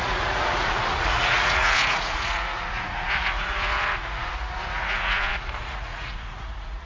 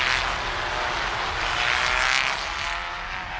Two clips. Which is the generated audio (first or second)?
first